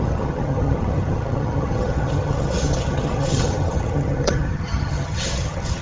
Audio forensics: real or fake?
fake